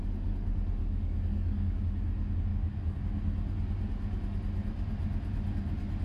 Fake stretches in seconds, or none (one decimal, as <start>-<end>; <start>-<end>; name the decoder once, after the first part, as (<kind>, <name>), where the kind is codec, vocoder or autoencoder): 0.8-1.8 (codec, DAC); 2.5-3.0